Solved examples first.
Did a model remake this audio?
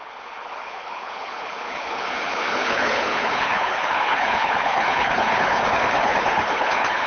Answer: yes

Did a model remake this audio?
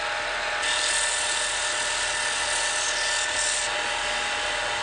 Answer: no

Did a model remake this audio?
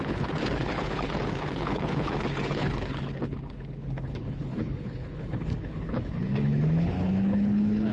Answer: yes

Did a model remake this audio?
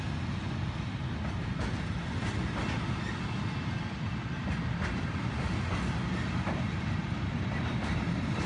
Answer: no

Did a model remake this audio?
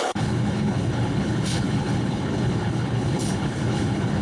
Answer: yes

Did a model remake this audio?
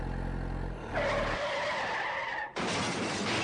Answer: no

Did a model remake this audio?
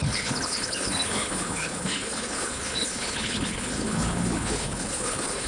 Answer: yes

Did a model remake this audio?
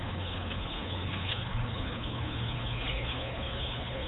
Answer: yes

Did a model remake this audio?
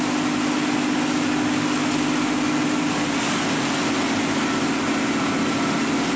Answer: no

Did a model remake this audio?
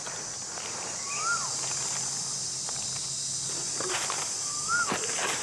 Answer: no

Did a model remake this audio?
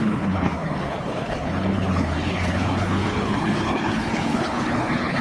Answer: yes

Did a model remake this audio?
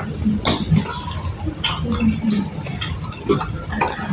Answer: no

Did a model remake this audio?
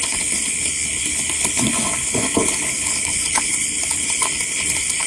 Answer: yes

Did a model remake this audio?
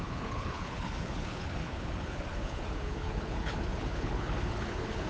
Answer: yes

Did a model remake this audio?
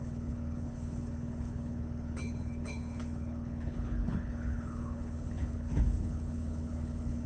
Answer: yes